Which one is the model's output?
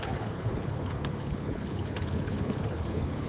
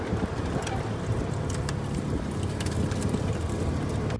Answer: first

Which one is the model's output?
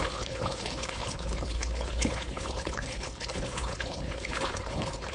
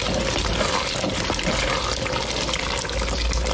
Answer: first